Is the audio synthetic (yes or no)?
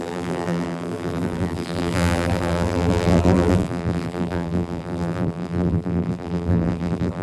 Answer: yes